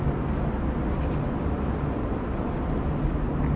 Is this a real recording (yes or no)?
yes